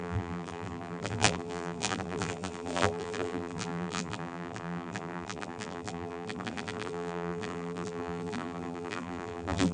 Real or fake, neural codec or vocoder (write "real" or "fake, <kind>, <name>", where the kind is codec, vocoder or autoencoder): fake, vocoder, BigVGAN v2